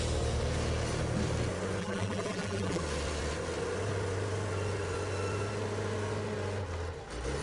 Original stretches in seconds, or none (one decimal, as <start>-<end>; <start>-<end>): 0.0-1.8; 2.8-7.4